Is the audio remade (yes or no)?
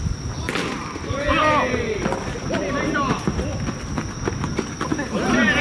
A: no